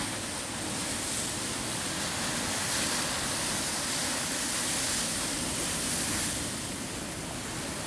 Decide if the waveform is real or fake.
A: real